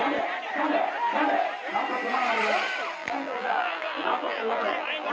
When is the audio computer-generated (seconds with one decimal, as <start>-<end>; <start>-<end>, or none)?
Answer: 3.0-5.1